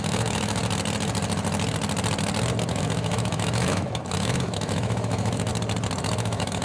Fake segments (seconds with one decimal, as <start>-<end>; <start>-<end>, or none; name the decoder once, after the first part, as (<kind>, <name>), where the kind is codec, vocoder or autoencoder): 0.0-0.6 (autoencoder, DAC-VAE); 2.7-5.5; 6.0-6.6